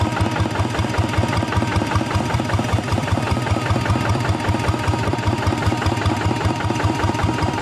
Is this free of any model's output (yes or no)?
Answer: no